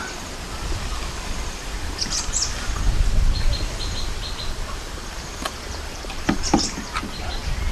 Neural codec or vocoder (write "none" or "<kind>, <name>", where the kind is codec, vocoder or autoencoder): vocoder, BigVGAN v2